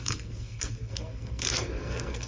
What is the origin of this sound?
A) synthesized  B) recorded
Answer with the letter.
A